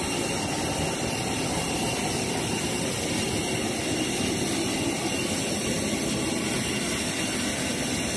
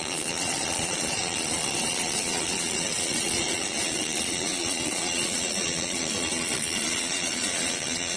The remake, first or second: second